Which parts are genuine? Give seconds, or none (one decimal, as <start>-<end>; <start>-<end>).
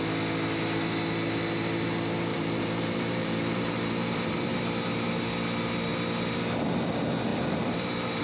0.0-2.3; 4.6-7.3